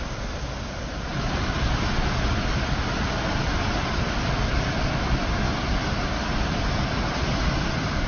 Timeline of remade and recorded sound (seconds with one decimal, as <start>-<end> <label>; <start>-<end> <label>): 0.0-8.1 recorded